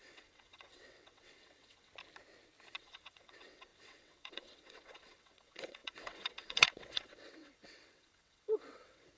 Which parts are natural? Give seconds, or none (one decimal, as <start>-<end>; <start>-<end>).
1.9-2.8